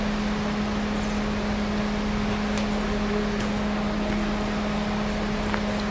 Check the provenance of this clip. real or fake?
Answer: real